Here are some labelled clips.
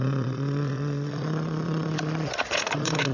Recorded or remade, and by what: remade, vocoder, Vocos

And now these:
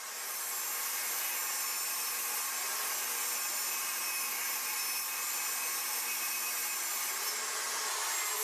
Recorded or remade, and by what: recorded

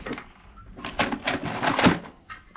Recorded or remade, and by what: recorded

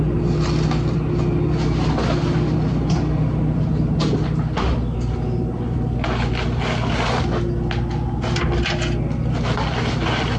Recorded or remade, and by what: recorded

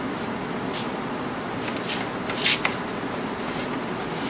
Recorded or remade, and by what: recorded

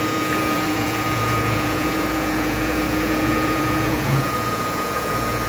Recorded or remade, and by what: remade, vocoder, Vocos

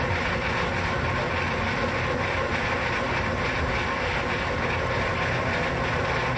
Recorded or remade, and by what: recorded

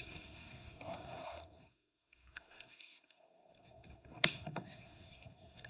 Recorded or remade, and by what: remade, codec, SNAC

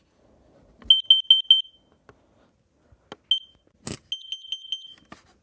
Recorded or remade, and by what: recorded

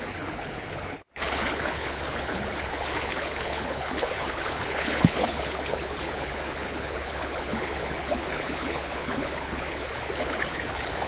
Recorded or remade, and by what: remade, codec, HILCodec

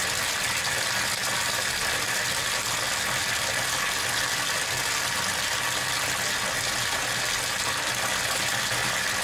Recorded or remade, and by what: recorded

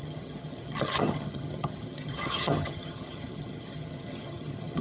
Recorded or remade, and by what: remade, vocoder, HiFi-GAN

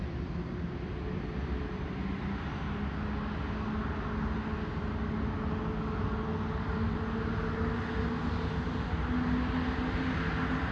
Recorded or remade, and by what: recorded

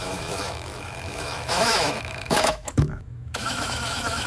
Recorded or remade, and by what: remade, autoencoder, DAC-VAE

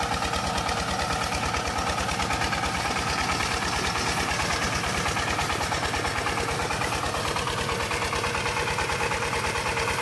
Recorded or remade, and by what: recorded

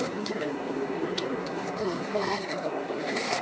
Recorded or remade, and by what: remade, codec, SNAC